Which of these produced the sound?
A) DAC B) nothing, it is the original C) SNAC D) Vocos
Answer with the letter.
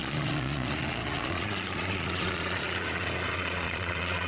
D